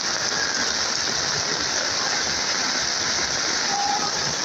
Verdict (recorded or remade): recorded